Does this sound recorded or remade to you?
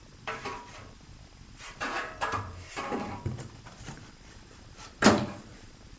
remade